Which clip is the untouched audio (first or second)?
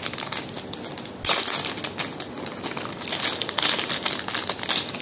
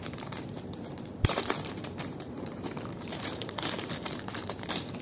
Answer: first